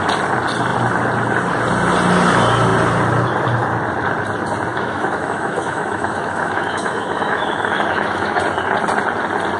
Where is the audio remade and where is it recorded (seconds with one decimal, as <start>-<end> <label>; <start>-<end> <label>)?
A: 0.0-4.7 recorded; 4.7-8.4 remade; 8.4-9.6 recorded